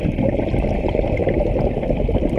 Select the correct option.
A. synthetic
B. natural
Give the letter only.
B